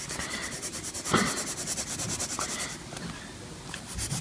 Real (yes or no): yes